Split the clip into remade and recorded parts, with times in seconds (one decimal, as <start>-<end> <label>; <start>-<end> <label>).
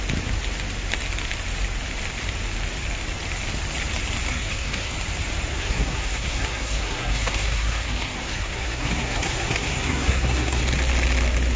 0.0-4.3 recorded; 4.3-4.9 remade; 4.9-5.5 recorded; 5.5-10.6 remade; 10.6-11.6 recorded